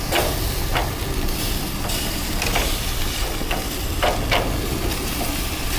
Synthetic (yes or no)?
no